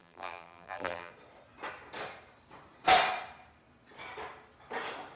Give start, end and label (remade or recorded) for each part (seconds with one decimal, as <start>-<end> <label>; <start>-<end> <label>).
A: 0.0-1.1 remade; 1.1-5.2 recorded